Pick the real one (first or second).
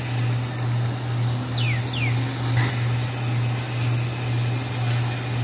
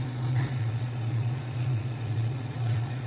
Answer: first